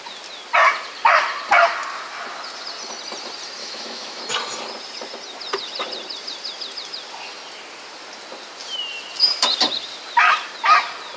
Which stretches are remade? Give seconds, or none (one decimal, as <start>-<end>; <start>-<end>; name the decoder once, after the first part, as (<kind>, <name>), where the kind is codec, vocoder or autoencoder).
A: 3.6-4.2 (autoencoder, DAC-VAE)

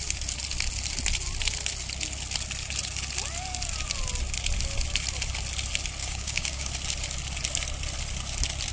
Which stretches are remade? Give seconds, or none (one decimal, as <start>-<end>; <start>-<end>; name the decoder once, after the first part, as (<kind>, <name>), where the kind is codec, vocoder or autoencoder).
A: 6.0-6.7 (codec, DAC)

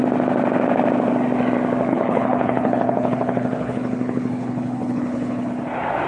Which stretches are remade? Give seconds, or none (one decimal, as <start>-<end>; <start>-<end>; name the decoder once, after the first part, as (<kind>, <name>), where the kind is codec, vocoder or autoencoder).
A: 1.9-5.5 (codec, HILCodec)

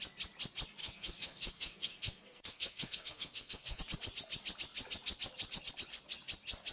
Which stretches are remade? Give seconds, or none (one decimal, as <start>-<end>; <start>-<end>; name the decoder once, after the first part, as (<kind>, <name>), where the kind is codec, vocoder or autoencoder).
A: 0.8-3.8 (codec, SNAC)

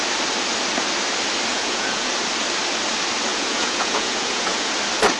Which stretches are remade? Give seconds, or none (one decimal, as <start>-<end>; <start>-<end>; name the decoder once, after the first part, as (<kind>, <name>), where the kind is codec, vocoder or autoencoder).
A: 1.5-2.1 (vocoder, Vocos); 3.3-4.7

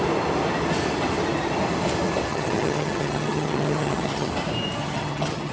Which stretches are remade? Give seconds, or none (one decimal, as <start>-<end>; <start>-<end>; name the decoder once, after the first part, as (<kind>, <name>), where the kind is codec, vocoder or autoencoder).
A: 2.3-4.3 (vocoder, HiFi-GAN); 4.8-5.5